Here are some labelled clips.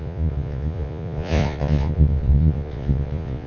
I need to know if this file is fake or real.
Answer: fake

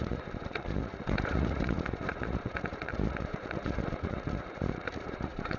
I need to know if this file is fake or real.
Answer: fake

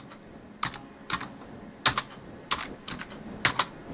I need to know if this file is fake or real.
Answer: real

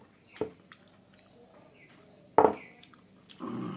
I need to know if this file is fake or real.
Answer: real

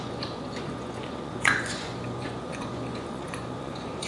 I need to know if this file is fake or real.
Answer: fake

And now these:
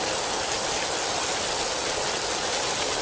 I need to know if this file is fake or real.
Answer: real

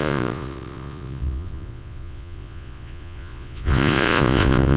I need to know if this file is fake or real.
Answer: fake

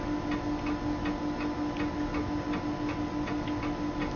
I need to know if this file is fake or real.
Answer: real